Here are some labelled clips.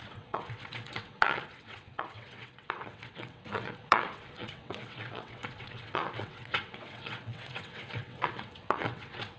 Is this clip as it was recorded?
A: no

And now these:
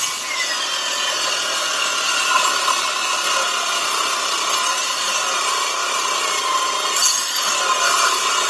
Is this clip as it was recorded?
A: yes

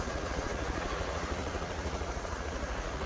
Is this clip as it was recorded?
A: no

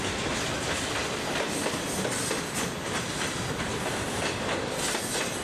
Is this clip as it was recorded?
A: yes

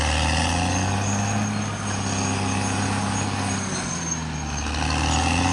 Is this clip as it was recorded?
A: yes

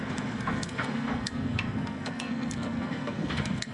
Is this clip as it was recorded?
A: no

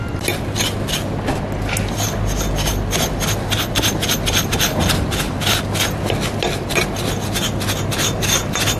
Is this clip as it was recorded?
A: yes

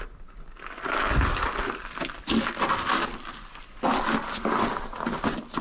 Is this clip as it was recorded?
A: yes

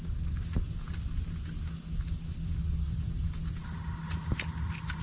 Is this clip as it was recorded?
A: yes